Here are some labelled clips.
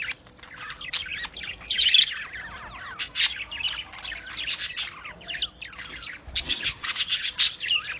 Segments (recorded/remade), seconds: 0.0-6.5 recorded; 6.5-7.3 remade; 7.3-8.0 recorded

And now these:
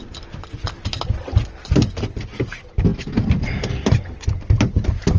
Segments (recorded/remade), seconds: 0.0-5.2 recorded

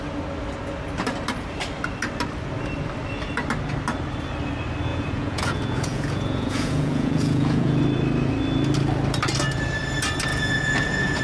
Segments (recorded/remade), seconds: 0.0-4.9 recorded; 4.9-7.8 remade; 7.8-10.3 recorded; 10.3-11.2 remade